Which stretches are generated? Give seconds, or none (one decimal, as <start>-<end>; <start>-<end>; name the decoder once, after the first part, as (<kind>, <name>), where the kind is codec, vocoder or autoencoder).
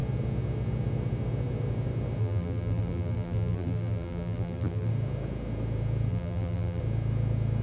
2.2-4.9 (vocoder, BigVGAN v2); 6.1-6.8